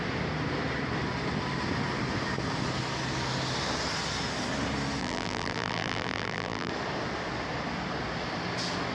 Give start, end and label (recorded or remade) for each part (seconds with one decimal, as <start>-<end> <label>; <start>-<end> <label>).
0.0-5.0 recorded; 5.0-6.7 remade; 6.7-8.9 recorded